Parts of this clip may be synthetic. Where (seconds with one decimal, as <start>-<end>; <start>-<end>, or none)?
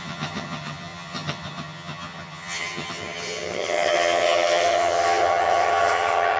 0.0-6.4